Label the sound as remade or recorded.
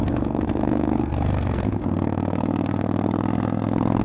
remade